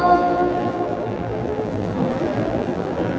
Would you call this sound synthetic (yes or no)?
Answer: yes